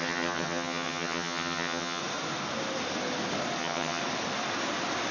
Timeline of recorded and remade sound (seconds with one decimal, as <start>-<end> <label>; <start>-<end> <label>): 0.0-2.0 remade; 2.0-3.6 recorded; 3.6-4.0 remade; 4.0-5.1 recorded